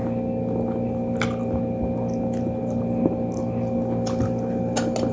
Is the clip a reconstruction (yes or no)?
no